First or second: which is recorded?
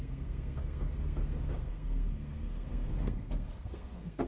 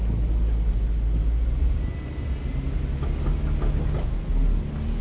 second